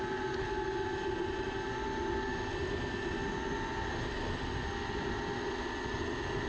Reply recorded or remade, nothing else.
recorded